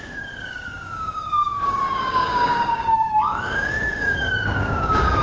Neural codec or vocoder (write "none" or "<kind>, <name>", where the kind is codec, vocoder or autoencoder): codec, DAC